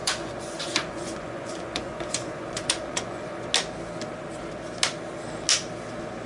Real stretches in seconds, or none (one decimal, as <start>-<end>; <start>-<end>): 3.5-6.3